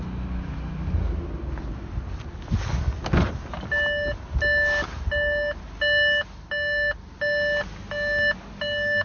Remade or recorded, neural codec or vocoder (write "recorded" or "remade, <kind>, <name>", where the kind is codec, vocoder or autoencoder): recorded